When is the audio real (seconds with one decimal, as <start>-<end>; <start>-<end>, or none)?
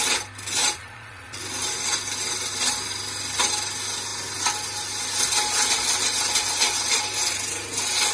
0.0-0.6; 1.4-8.1